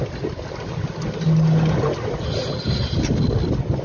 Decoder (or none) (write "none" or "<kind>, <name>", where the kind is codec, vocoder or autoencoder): none